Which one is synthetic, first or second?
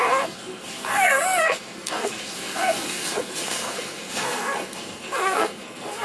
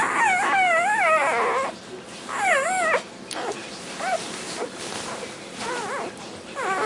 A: first